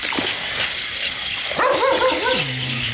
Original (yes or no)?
yes